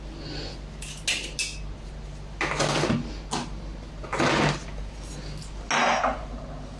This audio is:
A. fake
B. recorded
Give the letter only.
B